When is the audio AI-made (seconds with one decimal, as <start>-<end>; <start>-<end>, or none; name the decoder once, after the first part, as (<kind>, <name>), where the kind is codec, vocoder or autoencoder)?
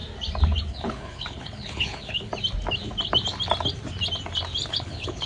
0.7-2.3 (codec, HILCodec); 4.7-5.3